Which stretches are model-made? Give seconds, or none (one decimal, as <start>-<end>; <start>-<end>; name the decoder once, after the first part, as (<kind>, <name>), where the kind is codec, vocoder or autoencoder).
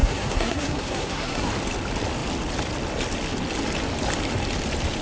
0.0-1.5 (codec, SNAC)